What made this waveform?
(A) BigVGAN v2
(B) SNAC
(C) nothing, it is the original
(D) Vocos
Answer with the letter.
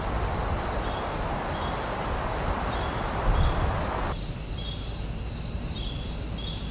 C